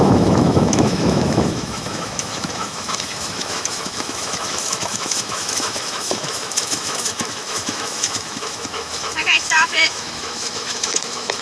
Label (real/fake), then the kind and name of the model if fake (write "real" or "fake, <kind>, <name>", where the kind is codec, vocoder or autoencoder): fake, autoencoder, DAC-VAE